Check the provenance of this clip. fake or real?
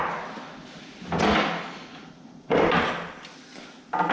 real